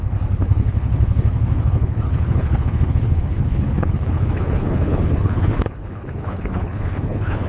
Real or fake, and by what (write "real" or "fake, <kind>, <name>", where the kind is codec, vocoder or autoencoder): fake, codec, HILCodec